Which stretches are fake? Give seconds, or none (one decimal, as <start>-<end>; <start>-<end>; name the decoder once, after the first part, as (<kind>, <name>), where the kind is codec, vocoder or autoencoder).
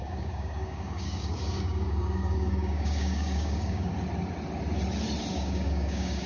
0.0-3.9 (codec, DAC); 5.3-6.3